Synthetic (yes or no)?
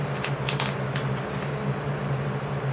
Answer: no